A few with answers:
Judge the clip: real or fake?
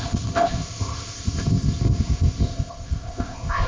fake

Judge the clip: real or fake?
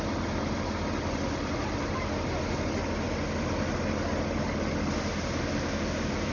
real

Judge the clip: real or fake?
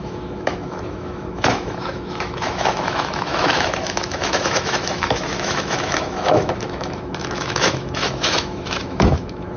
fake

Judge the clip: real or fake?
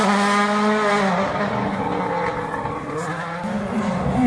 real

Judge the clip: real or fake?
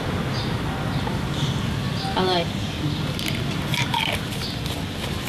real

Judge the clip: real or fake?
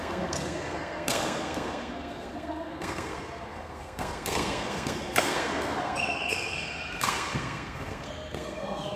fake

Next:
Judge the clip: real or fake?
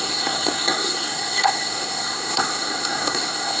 fake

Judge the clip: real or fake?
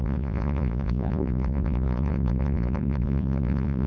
fake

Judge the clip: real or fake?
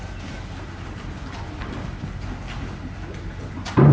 real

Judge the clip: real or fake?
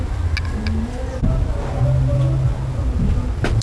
real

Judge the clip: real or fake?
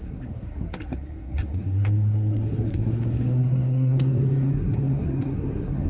fake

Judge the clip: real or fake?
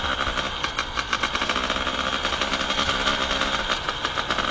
real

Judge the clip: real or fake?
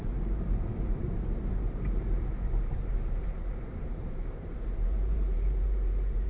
fake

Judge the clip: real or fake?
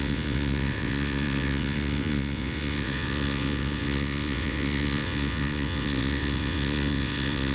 fake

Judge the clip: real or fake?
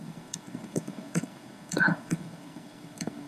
fake